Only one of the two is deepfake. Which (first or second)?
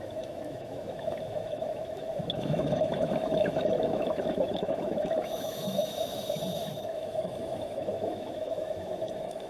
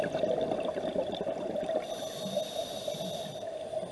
first